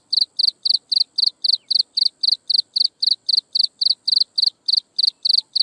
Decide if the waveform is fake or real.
real